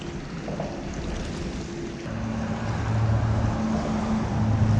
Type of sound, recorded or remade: recorded